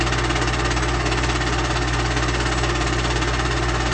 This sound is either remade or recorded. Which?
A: recorded